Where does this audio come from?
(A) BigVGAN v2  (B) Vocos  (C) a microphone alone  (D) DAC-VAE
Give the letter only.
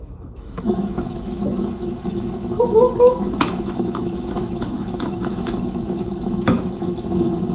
D